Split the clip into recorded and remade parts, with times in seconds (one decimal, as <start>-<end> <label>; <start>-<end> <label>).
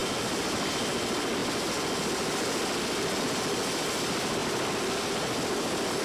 0.0-6.0 recorded